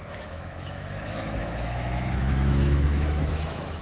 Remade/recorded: remade